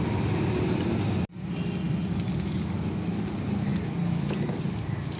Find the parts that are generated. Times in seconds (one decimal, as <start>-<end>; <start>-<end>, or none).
2.3-3.2; 3.7-4.6

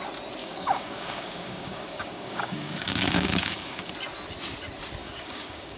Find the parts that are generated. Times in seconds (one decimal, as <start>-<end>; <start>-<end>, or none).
0.4-3.9; 5.0-5.8

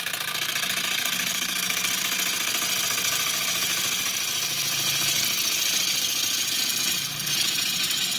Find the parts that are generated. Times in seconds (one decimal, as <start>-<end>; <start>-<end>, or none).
1.3-1.9

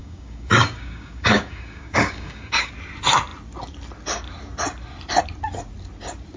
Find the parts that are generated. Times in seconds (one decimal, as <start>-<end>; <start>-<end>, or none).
0.0-2.7